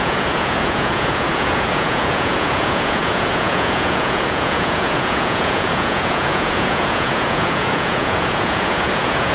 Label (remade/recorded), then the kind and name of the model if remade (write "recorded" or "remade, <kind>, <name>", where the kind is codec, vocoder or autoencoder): remade, vocoder, Vocos